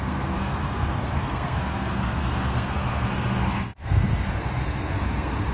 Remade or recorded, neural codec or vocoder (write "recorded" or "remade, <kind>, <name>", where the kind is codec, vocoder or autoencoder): remade, codec, SNAC